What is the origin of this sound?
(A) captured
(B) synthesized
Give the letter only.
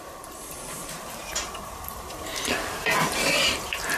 B